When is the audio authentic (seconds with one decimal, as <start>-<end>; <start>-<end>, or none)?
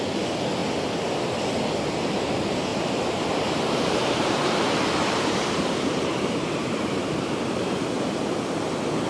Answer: 0.0-2.7; 7.8-9.1